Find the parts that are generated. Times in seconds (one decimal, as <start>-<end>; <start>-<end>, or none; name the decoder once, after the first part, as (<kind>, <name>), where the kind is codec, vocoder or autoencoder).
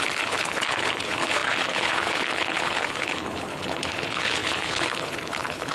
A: 0.0-5.7 (codec, HILCodec)